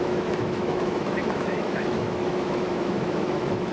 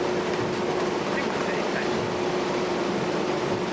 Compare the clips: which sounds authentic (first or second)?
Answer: second